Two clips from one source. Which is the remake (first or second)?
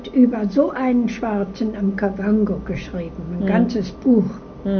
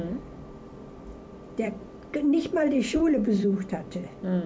second